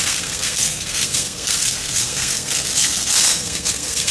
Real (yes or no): no